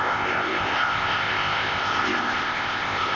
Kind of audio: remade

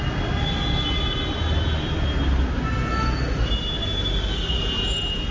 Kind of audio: recorded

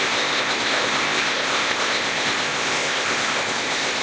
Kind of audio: remade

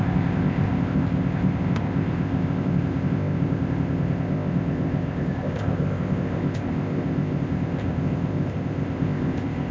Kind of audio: remade